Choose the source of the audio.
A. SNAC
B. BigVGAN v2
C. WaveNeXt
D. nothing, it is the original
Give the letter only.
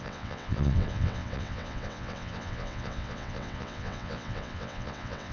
C